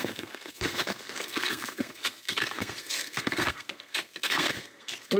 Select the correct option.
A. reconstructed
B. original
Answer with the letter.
A